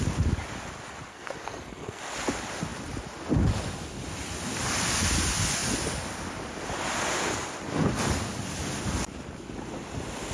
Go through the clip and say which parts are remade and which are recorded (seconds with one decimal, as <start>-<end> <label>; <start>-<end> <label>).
0.0-1.1 recorded; 1.1-2.0 remade; 2.0-10.3 recorded